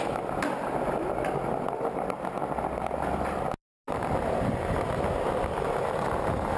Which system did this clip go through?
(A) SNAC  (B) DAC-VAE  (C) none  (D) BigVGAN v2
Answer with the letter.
C